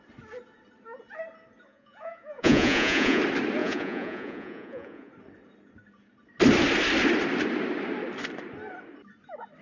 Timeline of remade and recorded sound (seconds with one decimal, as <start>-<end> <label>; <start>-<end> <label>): 0.0-1.7 recorded; 1.7-3.2 remade; 3.2-3.6 recorded; 3.6-5.1 remade; 5.1-9.6 recorded